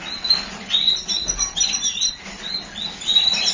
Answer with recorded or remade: recorded